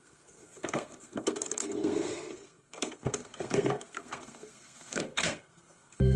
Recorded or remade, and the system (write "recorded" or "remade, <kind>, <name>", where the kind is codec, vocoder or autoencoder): remade, codec, SNAC